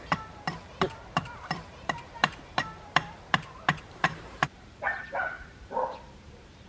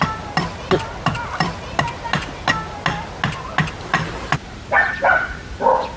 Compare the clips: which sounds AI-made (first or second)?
first